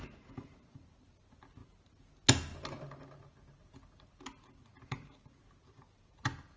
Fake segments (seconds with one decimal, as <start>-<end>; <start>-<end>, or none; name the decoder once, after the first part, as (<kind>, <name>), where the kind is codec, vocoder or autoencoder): none